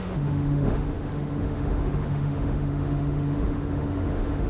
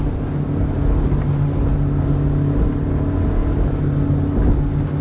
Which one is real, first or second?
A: second